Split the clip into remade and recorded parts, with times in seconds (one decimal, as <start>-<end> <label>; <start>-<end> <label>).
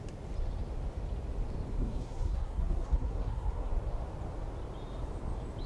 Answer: 0.0-1.8 recorded; 1.8-3.7 remade; 3.7-5.7 recorded